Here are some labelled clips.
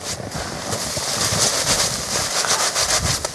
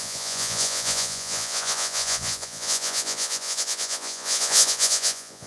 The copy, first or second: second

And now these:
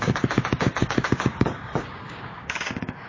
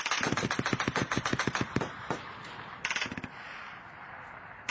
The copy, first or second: first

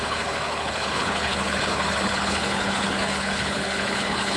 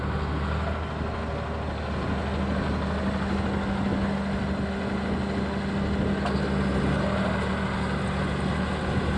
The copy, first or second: first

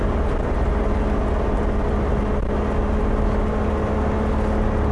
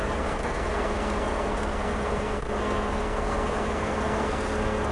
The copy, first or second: second